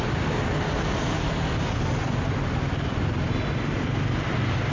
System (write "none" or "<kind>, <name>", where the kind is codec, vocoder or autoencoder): none